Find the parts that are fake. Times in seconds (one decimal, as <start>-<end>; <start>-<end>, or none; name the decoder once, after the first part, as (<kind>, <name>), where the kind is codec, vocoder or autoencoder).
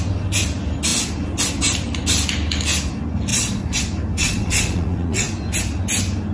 3.3-3.8 (vocoder, Vocos); 4.2-5.3